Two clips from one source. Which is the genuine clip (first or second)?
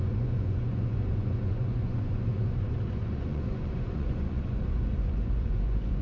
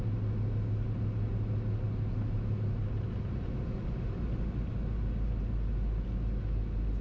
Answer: second